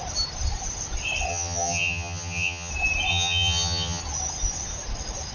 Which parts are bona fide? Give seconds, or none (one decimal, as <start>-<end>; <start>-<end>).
0.0-1.3; 2.7-3.1; 4.0-5.3